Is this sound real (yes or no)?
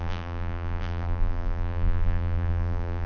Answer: no